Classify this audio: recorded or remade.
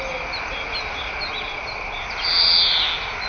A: recorded